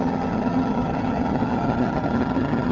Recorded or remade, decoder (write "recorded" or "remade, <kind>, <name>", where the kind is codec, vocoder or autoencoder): remade, vocoder, HiFi-GAN